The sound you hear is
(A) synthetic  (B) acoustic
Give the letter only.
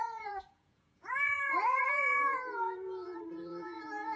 A